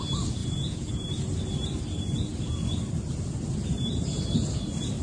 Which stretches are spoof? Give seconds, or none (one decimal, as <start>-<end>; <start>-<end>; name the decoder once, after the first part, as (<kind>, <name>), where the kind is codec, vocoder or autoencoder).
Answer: 0.4-0.9 (vocoder, Vocos)